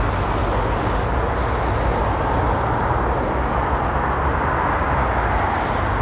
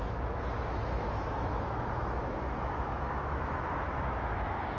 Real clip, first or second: first